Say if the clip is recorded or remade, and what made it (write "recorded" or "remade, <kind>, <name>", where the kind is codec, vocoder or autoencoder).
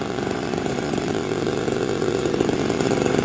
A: remade, vocoder, Vocos